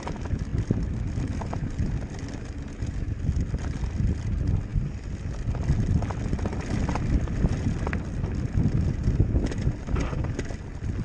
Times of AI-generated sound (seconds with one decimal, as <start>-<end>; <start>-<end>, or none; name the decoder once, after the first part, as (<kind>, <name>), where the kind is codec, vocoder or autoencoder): none